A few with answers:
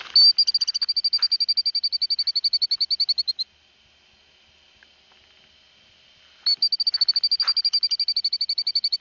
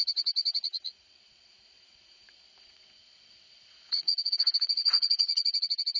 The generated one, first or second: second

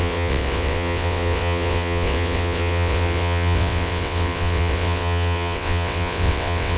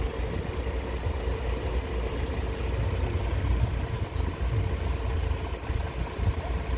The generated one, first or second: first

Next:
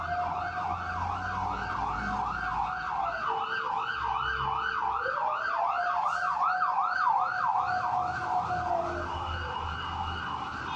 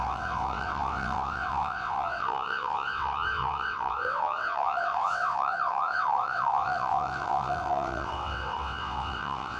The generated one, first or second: second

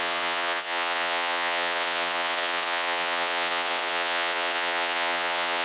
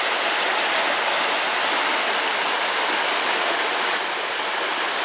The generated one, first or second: first